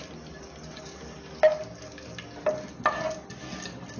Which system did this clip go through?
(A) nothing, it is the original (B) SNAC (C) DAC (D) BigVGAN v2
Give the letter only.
A